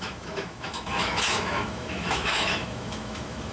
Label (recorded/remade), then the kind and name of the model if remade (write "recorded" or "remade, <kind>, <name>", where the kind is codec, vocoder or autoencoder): remade, autoencoder, DAC-VAE